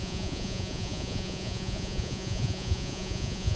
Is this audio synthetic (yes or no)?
yes